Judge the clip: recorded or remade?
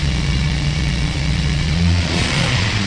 remade